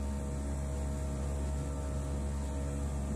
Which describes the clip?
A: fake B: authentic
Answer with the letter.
B